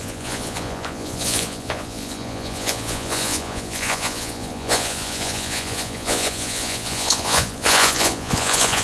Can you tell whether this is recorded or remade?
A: remade